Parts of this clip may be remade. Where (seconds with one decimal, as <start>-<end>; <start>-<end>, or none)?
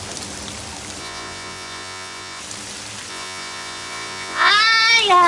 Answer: 1.0-2.4; 3.1-4.5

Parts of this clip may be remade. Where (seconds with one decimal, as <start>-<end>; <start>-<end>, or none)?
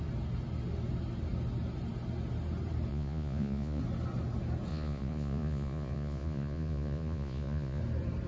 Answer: 2.9-3.8; 4.7-7.8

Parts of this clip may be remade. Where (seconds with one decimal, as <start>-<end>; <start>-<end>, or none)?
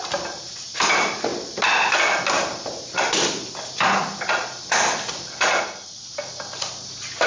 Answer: none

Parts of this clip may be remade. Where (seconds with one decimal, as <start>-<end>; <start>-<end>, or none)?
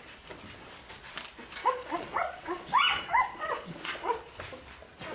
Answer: 1.6-4.4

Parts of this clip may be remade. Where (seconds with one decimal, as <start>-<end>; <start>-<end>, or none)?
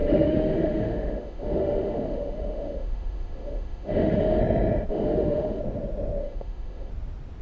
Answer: 0.0-4.4; 4.9-5.6; 6.2-6.9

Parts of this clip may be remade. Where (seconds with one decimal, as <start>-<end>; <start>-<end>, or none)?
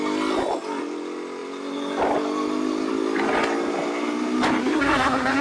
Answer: 4.6-5.4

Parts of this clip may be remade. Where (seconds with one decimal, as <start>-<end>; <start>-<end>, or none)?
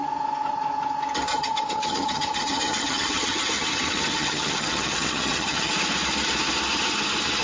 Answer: 1.3-5.7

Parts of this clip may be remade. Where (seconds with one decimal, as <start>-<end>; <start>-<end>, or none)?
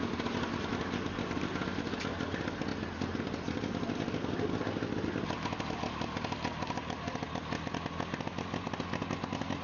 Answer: none